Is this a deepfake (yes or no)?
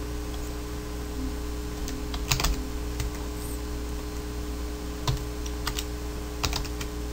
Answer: no